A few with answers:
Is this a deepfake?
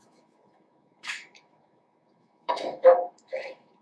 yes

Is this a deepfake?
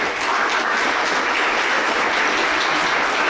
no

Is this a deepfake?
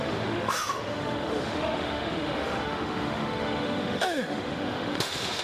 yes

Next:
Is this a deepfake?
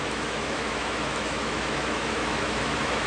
yes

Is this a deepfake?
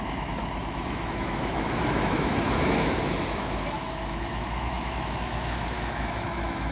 yes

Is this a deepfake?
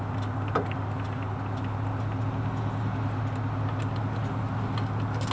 no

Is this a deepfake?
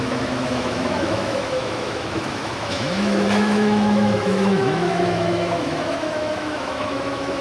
yes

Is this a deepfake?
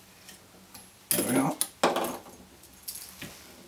no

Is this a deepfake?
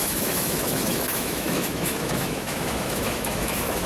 yes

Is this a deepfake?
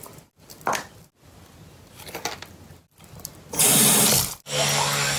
no